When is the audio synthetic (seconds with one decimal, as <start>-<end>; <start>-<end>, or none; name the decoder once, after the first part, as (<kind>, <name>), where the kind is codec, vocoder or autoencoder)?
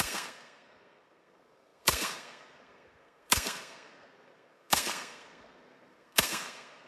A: 0.0-6.9 (codec, SNAC)